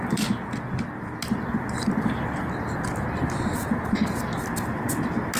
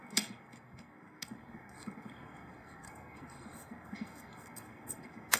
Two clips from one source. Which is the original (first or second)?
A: first